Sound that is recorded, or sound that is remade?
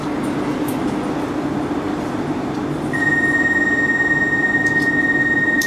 recorded